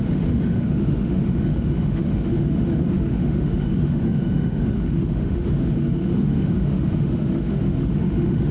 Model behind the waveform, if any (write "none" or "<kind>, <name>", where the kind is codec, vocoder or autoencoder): autoencoder, DAC-VAE